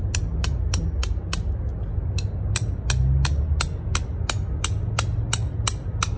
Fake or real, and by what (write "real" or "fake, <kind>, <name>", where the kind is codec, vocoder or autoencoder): real